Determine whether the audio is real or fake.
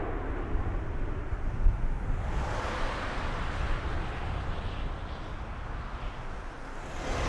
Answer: real